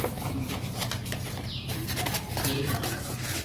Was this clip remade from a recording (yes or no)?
yes